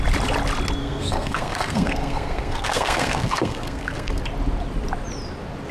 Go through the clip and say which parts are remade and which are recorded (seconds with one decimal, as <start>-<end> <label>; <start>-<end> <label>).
0.0-0.8 recorded; 0.8-4.2 remade; 4.2-5.7 recorded